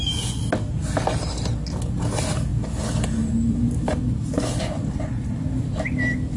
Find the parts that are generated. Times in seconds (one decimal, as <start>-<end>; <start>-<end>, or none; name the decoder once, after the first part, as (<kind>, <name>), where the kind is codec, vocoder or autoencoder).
none